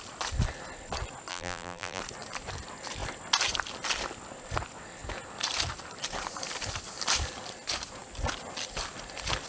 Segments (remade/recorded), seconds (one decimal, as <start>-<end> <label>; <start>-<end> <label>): 0.0-1.3 recorded; 1.3-2.0 remade; 2.0-9.5 recorded